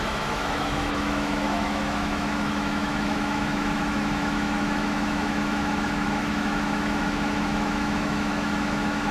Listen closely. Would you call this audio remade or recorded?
remade